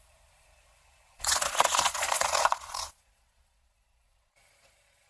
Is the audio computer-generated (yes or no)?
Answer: yes